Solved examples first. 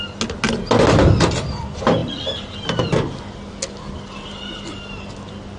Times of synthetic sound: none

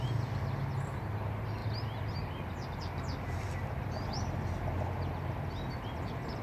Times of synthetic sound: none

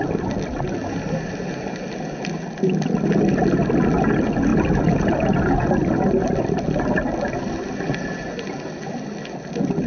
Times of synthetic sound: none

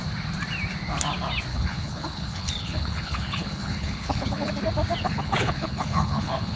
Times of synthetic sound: 1.5-4.5 (codec, HILCodec); 5.0-6.6

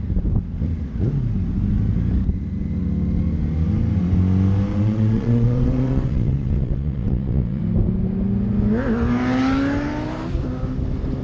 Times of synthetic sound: 4.7-7.6 (vocoder, WaveNeXt)